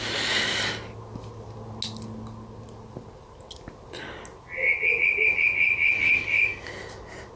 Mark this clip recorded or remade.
recorded